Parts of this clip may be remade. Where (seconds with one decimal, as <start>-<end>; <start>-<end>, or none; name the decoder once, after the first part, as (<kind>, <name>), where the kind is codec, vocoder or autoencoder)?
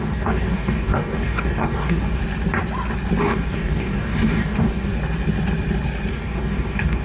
0.0-2.2 (codec, DAC); 3.2-4.9; 6.1-7.0